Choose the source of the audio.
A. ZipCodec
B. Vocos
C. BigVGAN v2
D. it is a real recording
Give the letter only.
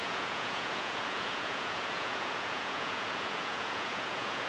B